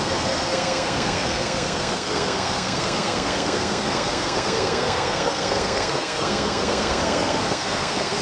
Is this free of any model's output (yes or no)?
no